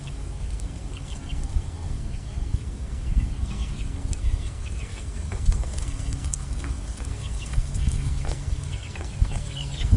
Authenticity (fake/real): fake